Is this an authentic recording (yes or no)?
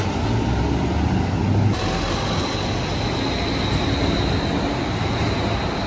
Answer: yes